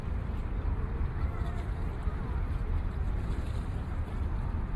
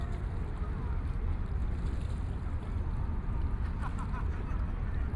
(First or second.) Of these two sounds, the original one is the second